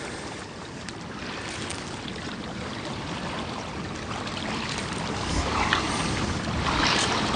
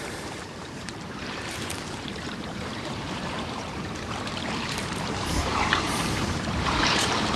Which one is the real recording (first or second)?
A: first